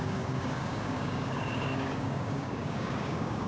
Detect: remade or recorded remade